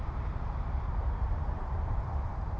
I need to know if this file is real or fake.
fake